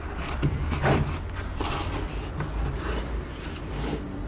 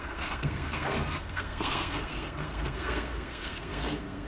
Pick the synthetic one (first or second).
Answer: second